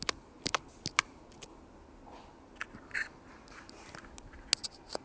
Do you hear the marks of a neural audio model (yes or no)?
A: no